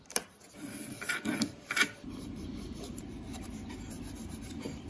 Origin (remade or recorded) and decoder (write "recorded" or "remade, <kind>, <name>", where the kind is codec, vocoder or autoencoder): remade, vocoder, BigVGAN v2